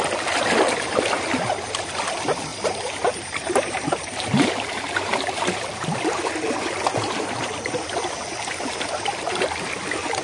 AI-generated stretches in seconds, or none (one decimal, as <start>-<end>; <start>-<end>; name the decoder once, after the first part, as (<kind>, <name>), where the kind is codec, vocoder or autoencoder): 2.5-6.2 (vocoder, BigVGAN v2)